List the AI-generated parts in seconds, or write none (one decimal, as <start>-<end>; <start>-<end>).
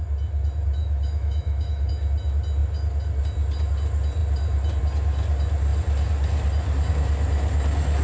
0.8-1.9